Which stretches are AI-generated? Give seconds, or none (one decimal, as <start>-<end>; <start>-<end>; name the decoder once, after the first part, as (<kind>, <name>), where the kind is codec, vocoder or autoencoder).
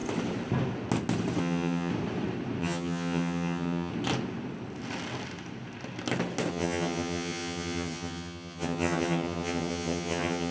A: 1.4-1.9 (vocoder, HiFi-GAN); 2.6-3.9; 6.5-10.5